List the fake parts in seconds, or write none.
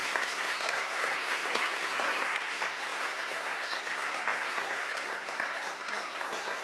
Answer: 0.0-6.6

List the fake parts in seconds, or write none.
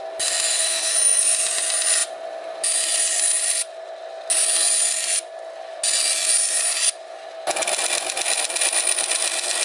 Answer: 0.5-1.2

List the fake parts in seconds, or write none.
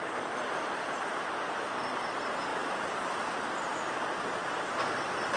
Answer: none